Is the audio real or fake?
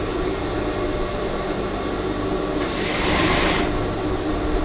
fake